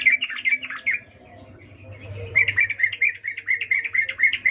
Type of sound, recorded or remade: remade